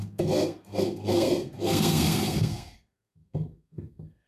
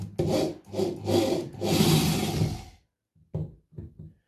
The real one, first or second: second